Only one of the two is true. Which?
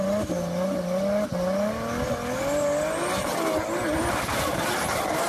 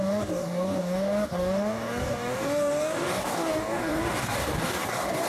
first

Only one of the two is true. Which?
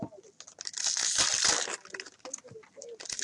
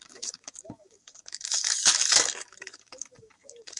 first